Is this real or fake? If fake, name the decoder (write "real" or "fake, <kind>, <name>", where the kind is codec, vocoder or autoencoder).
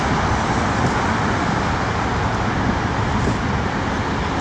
real